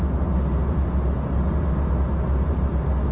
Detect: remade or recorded recorded